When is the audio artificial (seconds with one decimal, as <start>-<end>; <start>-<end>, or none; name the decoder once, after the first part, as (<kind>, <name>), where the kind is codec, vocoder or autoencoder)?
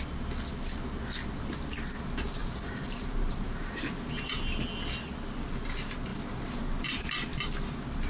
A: 2.4-4.3 (vocoder, BigVGAN v2)